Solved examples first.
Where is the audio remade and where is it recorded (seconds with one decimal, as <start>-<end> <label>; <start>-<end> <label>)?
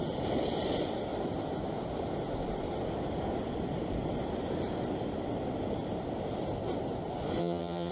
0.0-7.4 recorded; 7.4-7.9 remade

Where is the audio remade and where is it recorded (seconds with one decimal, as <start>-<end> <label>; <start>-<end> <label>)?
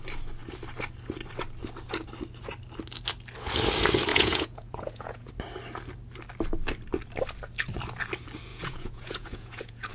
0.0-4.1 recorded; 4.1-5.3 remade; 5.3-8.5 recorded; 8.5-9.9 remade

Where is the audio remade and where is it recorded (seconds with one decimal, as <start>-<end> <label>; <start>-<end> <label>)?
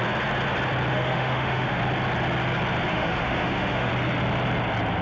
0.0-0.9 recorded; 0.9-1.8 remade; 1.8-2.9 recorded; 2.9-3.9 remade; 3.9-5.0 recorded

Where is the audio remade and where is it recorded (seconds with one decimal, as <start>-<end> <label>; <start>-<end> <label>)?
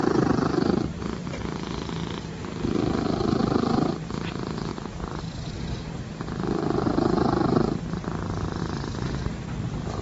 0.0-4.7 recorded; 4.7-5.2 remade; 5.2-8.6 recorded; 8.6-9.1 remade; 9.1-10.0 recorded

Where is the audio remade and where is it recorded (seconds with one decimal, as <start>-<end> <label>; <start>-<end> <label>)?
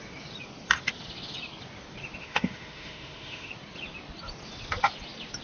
0.0-2.2 recorded; 2.2-3.5 remade; 3.5-5.4 recorded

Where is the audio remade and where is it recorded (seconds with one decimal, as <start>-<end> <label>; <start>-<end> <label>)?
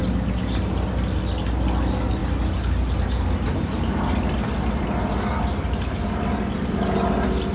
0.0-7.5 recorded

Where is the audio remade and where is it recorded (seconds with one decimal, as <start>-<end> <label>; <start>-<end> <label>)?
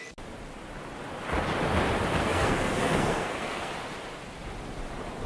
0.0-2.2 recorded; 2.2-3.7 remade; 3.7-5.3 recorded